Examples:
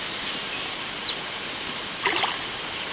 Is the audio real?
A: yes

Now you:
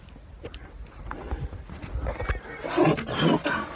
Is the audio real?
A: yes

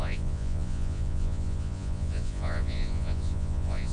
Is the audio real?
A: no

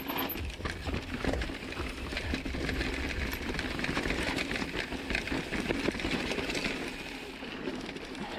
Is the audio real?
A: no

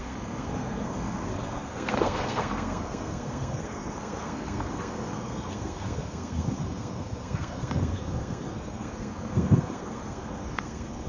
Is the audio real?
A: no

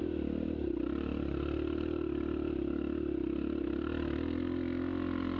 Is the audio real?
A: yes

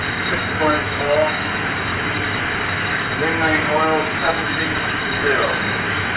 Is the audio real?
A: no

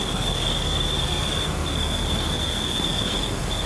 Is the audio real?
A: no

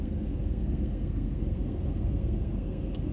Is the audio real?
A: no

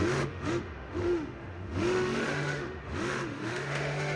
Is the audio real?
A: no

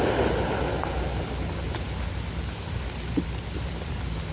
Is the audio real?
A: yes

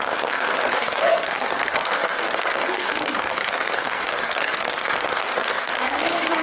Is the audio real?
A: no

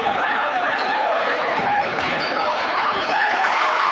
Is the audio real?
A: no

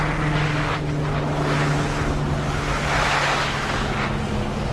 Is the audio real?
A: yes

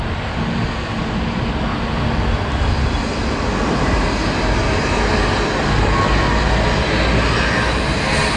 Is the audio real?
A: yes